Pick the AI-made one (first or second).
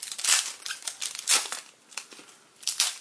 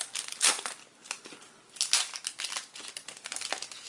first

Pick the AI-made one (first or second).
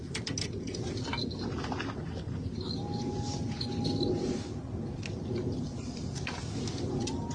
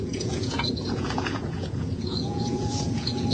second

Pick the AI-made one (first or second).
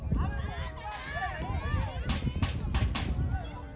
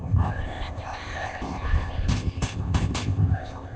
second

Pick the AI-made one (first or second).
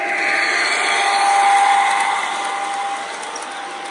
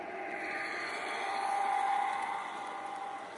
second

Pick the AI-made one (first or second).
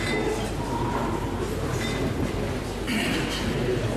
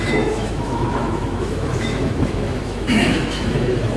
second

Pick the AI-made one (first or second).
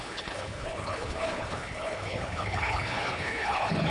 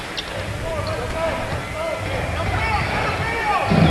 first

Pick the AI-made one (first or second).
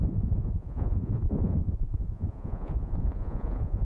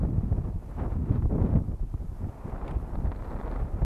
first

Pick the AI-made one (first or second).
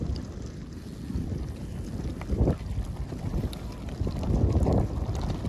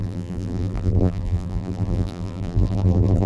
second